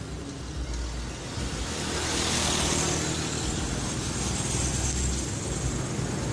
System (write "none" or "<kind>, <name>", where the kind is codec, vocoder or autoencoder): none